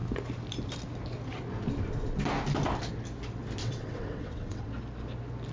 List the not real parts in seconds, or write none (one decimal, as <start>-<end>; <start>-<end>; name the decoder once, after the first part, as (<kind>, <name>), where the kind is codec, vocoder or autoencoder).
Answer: 3.6-4.7 (vocoder, WaveNeXt)